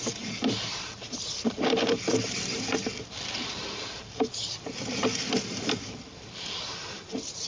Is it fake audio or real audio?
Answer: fake